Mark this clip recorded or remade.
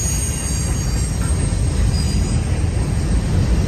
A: recorded